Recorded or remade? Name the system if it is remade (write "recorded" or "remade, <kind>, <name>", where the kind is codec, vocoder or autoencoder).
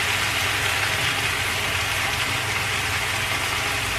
recorded